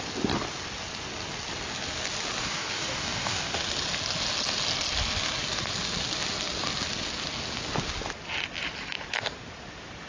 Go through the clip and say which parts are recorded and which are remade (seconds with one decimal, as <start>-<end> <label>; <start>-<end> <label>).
0.0-2.4 recorded; 2.4-3.6 remade; 3.6-10.1 recorded